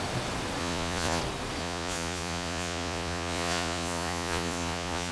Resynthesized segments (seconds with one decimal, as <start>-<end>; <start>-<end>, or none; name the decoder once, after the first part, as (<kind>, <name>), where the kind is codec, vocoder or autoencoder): 0.6-1.2 (vocoder, Vocos); 1.6-5.1